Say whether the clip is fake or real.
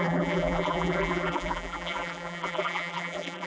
fake